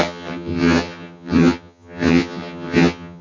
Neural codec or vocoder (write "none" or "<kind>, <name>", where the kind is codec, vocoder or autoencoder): vocoder, HiFi-GAN